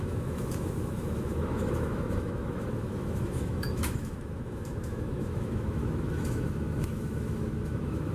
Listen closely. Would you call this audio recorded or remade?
remade